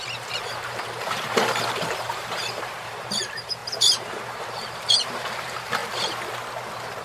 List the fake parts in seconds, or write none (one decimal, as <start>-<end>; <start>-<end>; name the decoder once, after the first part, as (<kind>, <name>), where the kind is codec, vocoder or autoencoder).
0.0-5.8 (vocoder, BigVGAN v2)